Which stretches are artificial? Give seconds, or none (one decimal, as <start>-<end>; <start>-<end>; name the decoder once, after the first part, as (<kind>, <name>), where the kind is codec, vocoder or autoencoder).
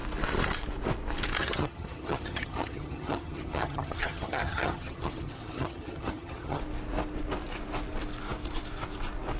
1.4-6.6 (vocoder, HiFi-GAN)